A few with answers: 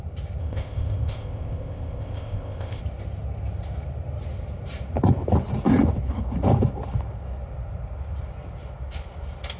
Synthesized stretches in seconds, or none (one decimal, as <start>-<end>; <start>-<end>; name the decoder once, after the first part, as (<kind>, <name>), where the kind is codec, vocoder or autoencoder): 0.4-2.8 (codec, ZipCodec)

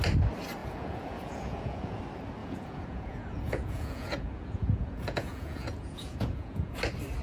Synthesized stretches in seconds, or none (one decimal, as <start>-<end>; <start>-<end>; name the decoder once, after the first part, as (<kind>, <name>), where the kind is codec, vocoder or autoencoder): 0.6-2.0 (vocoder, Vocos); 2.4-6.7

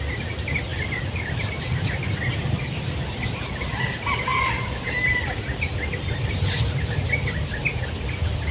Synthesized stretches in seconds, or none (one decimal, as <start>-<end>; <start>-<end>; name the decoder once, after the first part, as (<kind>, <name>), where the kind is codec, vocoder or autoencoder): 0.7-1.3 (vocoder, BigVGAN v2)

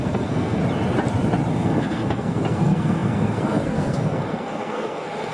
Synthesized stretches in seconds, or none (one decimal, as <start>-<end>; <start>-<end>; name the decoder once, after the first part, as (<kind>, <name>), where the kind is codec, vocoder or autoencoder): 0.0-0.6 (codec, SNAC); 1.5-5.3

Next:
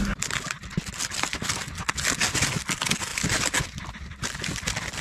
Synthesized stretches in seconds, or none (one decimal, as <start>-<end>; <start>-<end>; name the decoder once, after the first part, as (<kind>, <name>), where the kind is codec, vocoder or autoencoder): none

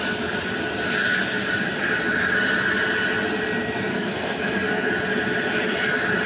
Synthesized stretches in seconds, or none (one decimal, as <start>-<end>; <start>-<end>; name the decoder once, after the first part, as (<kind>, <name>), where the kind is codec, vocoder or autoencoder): 3.9-4.9 (codec, SNAC)